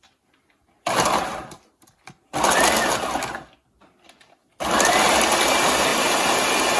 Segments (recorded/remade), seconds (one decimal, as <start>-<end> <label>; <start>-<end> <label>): 0.0-6.8 recorded